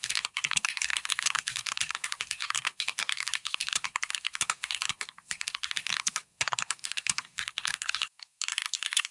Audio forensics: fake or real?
fake